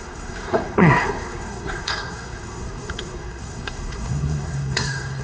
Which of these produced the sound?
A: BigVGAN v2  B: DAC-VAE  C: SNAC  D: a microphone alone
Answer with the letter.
C